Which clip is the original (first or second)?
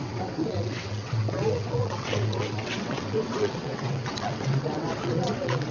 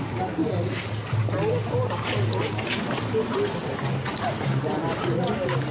second